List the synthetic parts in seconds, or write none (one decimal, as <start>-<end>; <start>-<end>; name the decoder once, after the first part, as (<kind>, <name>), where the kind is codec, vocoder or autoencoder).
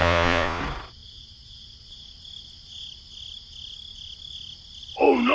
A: 0.0-0.6 (vocoder, Vocos)